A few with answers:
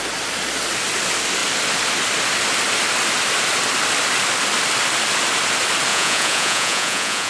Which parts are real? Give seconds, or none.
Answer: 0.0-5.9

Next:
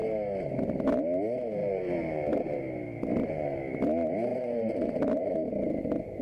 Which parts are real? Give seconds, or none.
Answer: 0.0-1.6; 2.6-3.1; 3.6-4.3